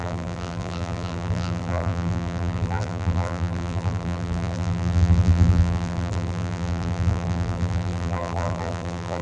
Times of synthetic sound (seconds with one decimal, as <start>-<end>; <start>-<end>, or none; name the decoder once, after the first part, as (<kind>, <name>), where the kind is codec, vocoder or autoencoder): 0.0-9.2 (vocoder, BigVGAN v2)